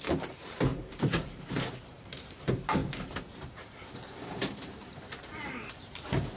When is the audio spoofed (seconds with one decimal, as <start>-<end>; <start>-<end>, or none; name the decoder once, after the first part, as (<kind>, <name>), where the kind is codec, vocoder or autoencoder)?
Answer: 0.0-6.4 (vocoder, BigVGAN v2)